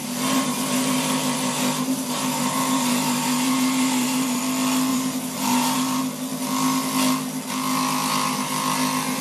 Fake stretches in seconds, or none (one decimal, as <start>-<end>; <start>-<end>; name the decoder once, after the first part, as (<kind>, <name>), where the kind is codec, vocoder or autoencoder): 0.0-4.4 (vocoder, BigVGAN v2); 4.9-6.0